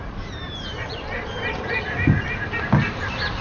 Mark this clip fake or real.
real